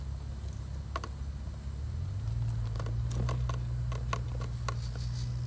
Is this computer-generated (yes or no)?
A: no